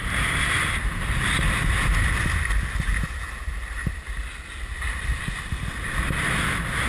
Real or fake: real